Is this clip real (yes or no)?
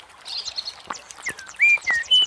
no